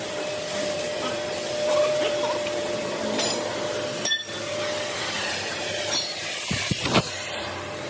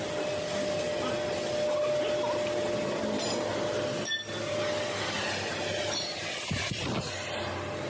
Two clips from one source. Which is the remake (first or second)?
first